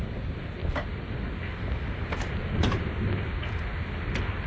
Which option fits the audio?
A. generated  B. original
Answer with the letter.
B